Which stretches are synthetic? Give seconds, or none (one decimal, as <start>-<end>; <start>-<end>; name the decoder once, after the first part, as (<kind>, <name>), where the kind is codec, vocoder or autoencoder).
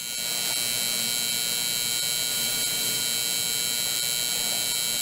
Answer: 2.3-3.0 (vocoder, BigVGAN v2)